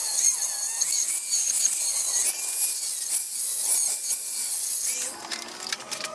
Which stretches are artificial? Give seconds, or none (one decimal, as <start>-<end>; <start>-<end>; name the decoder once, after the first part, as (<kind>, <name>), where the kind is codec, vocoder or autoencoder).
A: none